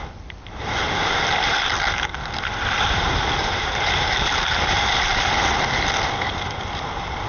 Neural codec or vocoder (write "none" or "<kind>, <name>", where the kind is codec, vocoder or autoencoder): vocoder, BigVGAN v2